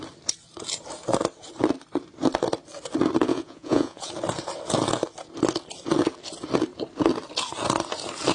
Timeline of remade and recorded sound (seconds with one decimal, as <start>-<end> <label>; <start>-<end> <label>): 0.0-3.3 recorded; 3.3-4.1 remade; 4.1-8.3 recorded